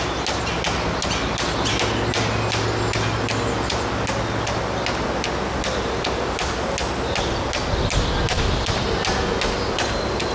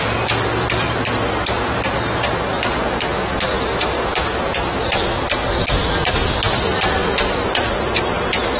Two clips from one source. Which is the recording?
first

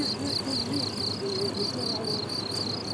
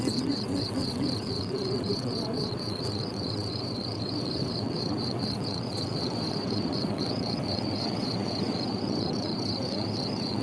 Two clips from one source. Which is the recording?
first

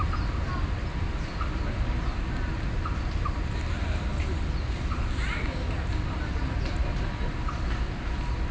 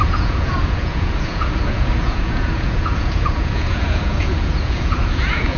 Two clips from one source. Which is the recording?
first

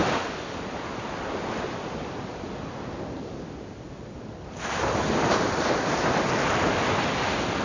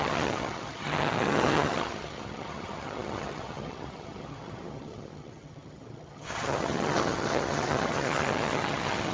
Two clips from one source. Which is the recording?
first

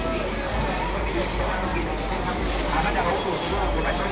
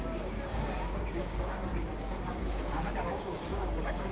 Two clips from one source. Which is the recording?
first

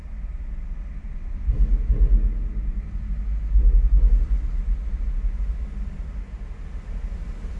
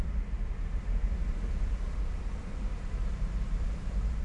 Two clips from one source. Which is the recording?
first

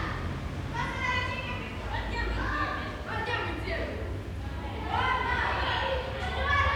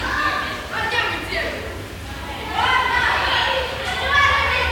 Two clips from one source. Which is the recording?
first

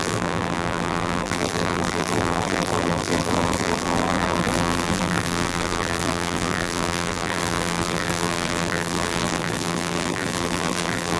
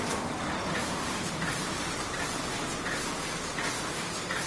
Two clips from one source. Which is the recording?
second